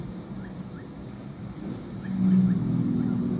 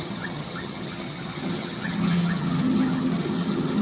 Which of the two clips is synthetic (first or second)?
second